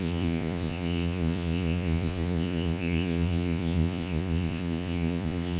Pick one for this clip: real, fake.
fake